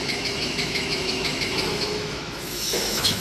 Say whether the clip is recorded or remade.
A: remade